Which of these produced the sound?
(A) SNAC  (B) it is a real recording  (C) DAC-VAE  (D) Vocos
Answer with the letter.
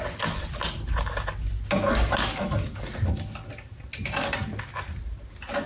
B